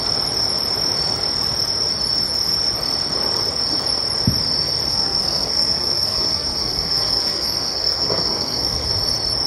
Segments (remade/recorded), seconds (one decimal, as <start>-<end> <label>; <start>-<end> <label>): 0.0-4.9 recorded; 4.9-8.9 remade; 8.9-9.5 recorded